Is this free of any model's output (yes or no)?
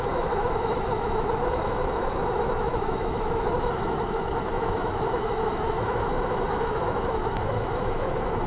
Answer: no